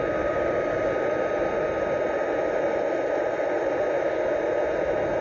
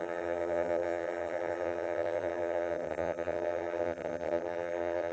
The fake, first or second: second